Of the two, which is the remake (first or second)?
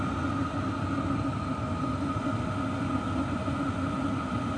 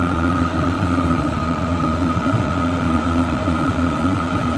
second